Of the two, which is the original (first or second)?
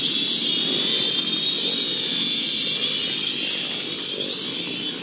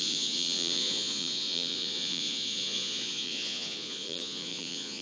first